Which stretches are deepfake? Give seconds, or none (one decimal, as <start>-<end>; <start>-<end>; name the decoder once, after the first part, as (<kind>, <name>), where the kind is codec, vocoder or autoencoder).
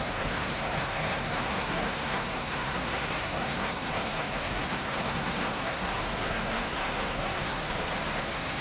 0.0-7.6 (codec, SNAC); 8.2-8.6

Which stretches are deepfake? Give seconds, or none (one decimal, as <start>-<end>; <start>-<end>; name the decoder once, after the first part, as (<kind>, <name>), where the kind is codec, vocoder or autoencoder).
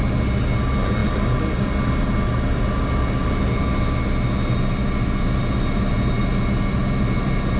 none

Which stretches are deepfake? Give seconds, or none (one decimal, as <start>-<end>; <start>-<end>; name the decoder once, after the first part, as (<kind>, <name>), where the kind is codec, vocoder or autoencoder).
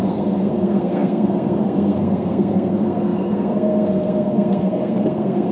0.0-5.5 (codec, SNAC)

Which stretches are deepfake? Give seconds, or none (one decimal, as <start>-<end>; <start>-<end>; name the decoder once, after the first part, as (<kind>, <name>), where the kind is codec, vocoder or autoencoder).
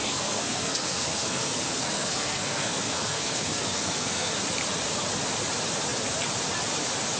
0.0-4.3 (codec, SNAC)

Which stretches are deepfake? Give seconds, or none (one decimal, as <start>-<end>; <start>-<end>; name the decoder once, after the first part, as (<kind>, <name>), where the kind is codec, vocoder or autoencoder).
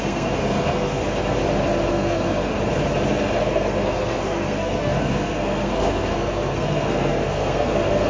0.0-1.0 (codec, SNAC); 1.9-2.5; 3.4-8.1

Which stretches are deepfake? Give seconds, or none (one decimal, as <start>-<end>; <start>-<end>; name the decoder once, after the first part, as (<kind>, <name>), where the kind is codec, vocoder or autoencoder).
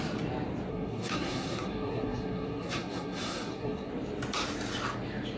0.7-3.9 (codec, SNAC)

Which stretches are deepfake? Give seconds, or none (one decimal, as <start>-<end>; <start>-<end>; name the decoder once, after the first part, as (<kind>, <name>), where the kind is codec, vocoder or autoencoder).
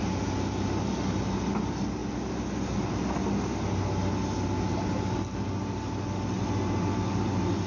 none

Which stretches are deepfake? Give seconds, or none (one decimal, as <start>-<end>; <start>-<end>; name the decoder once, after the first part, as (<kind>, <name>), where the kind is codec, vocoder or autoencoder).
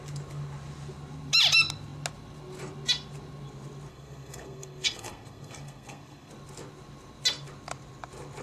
3.9-6.3 (codec, SNAC)